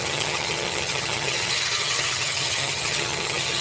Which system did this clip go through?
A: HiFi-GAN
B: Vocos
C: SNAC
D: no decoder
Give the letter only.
A